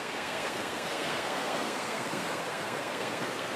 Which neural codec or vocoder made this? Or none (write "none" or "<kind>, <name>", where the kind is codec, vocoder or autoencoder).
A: codec, SNAC